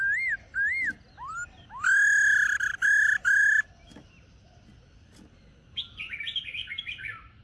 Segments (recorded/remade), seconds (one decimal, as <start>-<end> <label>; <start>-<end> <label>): 0.0-6.6 recorded; 6.6-7.4 remade